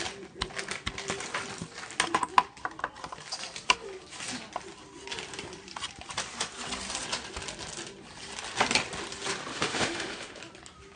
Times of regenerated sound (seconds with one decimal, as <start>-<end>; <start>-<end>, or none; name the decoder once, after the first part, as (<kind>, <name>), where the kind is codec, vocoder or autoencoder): 9.5-10.4 (autoencoder, DAC-VAE)